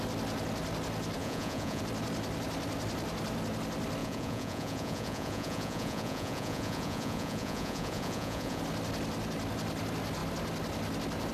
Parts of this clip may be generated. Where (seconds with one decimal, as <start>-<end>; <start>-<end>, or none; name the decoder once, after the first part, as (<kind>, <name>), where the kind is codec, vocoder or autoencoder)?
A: 1.2-1.8 (vocoder, Vocos); 4.0-8.6